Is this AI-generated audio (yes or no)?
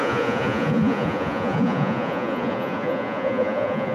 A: yes